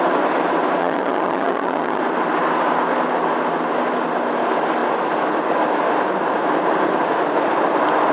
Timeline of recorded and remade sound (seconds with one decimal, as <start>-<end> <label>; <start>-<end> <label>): 0.0-0.8 recorded; 0.8-2.0 remade; 2.0-8.1 recorded